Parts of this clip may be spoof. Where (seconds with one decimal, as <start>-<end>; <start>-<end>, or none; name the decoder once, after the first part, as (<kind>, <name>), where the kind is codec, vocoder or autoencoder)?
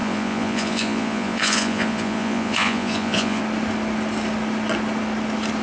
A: 0.0-3.4 (vocoder, Vocos)